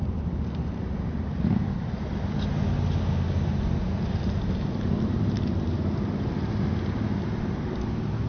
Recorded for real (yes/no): yes